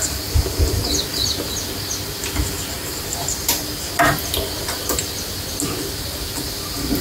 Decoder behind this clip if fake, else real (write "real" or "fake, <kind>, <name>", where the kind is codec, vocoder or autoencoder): real